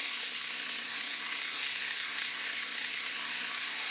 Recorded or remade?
remade